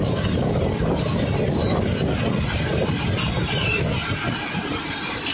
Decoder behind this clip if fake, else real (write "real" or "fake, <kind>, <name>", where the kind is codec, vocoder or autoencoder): real